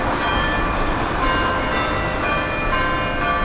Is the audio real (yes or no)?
yes